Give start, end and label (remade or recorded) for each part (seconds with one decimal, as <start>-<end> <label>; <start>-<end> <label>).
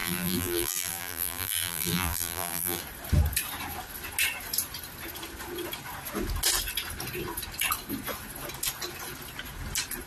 0.0-2.8 remade; 2.8-10.1 recorded